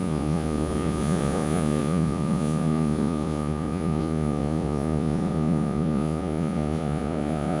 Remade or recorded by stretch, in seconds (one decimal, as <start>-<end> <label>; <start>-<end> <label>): 0.0-7.6 remade

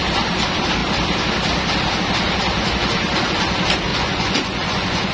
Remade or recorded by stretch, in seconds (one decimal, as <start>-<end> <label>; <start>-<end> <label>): 0.0-3.9 recorded; 3.9-5.1 remade